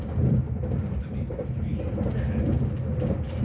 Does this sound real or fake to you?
real